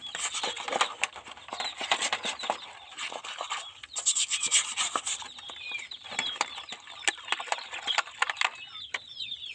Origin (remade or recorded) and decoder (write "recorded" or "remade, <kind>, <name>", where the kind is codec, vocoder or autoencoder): recorded